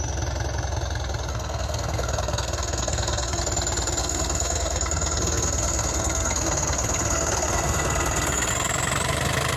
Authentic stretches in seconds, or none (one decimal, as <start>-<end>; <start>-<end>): 0.0-1.3; 3.4-4.0; 8.5-9.6